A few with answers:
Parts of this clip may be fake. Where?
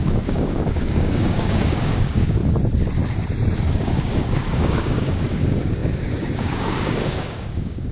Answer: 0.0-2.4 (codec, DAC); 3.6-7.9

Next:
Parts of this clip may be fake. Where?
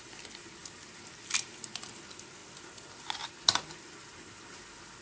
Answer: none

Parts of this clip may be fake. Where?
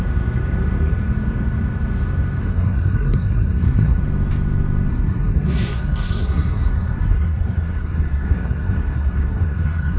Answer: 2.4-4.0 (codec, SNAC); 4.9-10.0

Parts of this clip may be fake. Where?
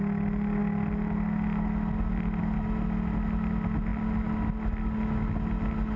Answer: none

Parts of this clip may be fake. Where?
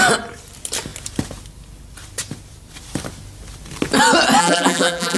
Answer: 4.4-5.2 (vocoder, BigVGAN v2)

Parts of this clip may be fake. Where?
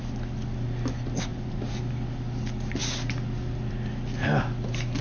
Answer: 1.3-1.9 (vocoder, BigVGAN v2)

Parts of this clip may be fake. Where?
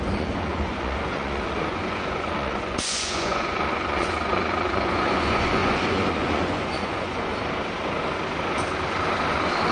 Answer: 0.0-7.3 (vocoder, Vocos)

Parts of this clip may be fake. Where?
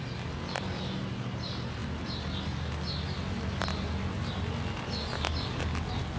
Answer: none